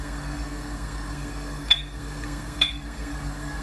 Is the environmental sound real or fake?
fake